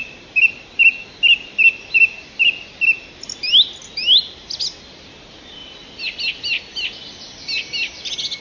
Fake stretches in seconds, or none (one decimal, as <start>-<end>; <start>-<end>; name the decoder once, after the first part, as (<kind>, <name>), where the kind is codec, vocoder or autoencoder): none